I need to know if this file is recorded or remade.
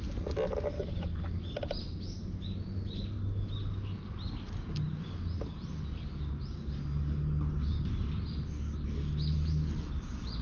recorded